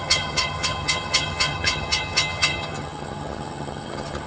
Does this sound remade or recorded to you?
remade